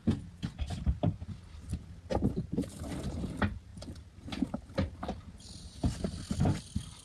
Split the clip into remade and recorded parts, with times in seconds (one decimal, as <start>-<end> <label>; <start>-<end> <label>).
0.0-7.0 recorded